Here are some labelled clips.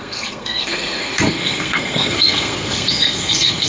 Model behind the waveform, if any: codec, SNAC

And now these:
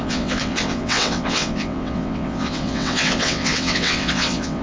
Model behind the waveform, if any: vocoder, WaveNeXt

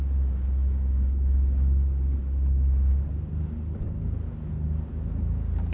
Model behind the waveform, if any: none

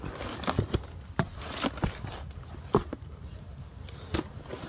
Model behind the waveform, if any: none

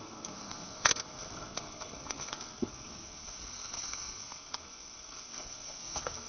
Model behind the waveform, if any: codec, SNAC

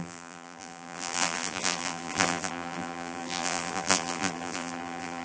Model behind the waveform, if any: vocoder, BigVGAN v2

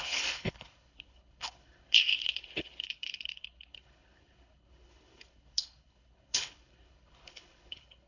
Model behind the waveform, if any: codec, HILCodec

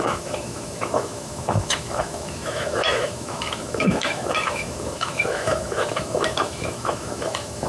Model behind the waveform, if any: autoencoder, DAC-VAE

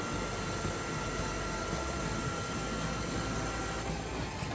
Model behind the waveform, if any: none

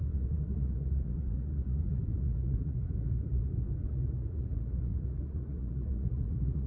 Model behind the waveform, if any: vocoder, Vocos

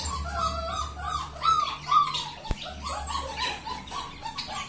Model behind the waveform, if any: none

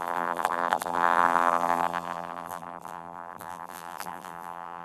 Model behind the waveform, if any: vocoder, BigVGAN v2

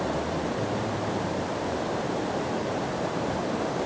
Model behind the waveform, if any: vocoder, BigVGAN v2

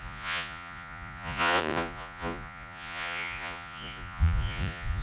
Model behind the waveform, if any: vocoder, Vocos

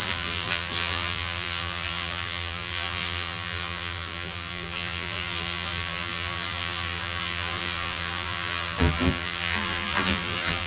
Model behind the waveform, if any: vocoder, BigVGAN v2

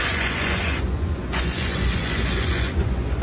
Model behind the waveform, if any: vocoder, Vocos